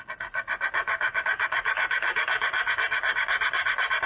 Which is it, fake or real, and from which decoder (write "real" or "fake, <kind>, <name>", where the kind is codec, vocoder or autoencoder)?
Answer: real